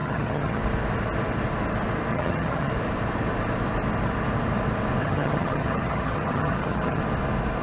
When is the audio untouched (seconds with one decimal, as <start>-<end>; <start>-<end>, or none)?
0.6-2.1; 2.7-5.0; 7.0-7.6